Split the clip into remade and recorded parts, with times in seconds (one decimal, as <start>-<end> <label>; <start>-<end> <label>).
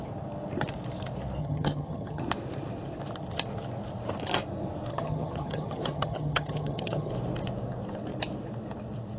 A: 0.0-1.4 recorded; 1.4-2.2 remade; 2.2-4.9 recorded; 4.9-7.1 remade; 7.1-9.2 recorded